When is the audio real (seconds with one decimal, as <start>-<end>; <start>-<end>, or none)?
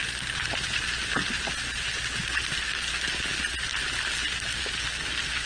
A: 3.3-5.5